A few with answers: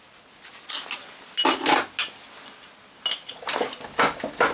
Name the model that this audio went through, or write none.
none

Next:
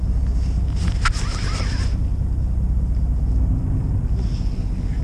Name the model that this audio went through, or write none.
none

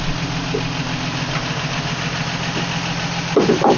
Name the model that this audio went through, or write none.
none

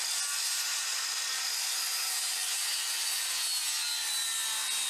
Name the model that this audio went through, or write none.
none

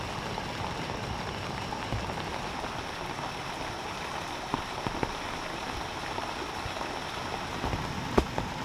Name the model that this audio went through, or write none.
none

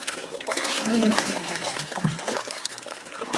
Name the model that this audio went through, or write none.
codec, SNAC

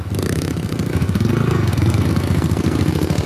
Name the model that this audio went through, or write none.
codec, SNAC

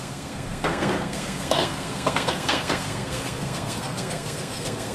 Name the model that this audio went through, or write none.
codec, SNAC